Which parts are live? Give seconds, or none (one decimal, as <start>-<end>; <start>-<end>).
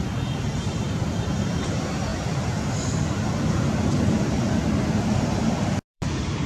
2.1-5.9